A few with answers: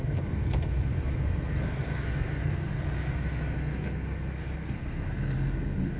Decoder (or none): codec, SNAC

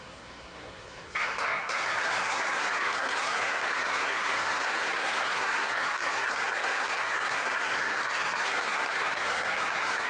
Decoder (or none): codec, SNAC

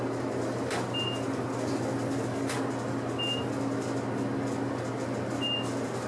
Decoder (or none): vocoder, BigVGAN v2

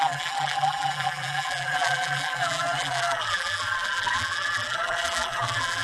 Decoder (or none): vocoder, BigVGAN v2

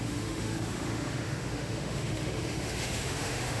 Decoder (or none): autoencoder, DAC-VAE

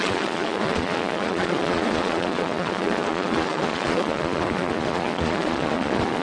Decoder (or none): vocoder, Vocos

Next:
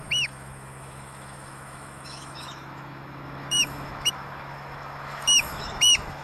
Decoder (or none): autoencoder, DAC-VAE